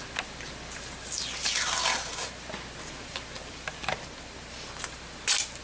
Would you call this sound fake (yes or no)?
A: no